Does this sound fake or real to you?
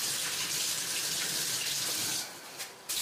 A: real